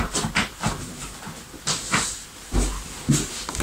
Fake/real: real